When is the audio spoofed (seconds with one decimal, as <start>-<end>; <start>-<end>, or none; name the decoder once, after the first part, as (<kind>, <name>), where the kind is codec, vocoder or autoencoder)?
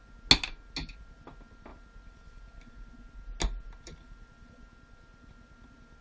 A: none